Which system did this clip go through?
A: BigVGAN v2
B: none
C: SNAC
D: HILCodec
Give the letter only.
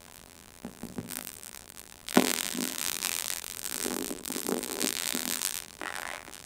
A